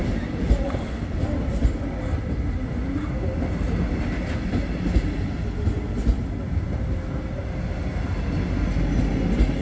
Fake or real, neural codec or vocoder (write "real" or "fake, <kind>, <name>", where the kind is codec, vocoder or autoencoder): real